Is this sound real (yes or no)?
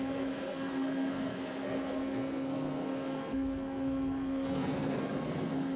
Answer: no